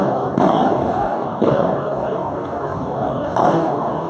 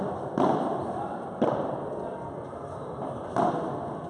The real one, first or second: second